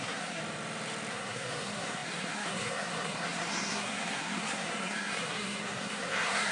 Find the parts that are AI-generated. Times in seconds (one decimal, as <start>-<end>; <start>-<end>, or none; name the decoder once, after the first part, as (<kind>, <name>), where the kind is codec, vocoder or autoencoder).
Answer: 0.0-0.4 (codec, SNAC); 1.1-6.5